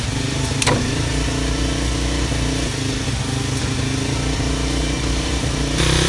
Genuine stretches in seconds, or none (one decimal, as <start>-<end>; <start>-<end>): 1.1-4.8